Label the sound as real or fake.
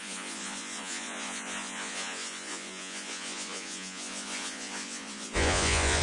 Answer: fake